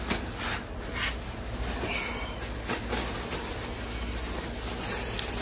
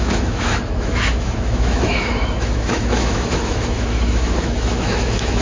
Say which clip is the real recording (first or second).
first